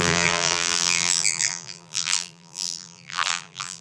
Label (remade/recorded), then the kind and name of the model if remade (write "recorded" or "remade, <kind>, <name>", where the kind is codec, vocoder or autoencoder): remade, vocoder, BigVGAN v2